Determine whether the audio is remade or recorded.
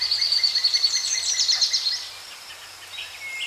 recorded